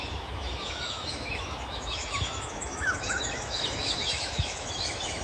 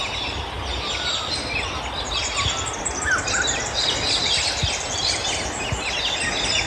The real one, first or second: second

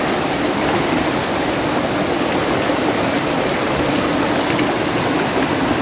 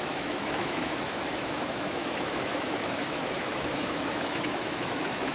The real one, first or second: first